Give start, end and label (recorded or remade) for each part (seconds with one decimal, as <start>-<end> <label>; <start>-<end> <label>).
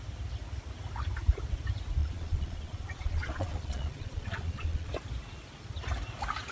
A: 0.0-2.0 recorded; 2.0-4.9 remade; 4.9-6.5 recorded